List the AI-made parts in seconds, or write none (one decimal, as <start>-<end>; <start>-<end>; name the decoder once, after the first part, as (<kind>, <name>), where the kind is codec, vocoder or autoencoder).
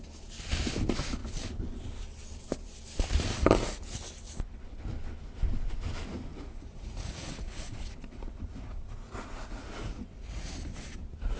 6.3-10.4 (vocoder, Vocos)